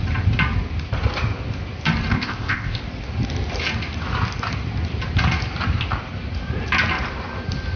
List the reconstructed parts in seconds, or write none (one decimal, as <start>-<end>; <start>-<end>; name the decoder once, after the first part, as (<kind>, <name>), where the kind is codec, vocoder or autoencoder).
2.1-2.8 (codec, ZipCodec)